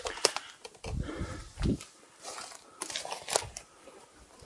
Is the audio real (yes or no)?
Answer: yes